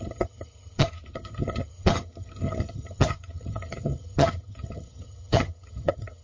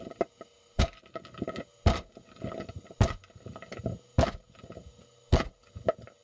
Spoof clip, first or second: first